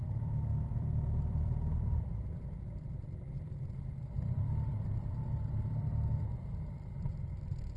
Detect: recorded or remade remade